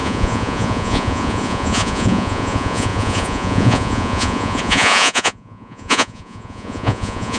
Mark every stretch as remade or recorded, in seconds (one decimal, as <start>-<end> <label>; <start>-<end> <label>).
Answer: 0.0-7.4 remade